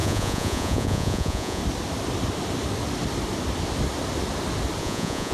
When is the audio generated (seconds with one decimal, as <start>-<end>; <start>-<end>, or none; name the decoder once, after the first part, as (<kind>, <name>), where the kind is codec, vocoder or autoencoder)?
0.0-1.6 (vocoder, Vocos); 4.8-5.3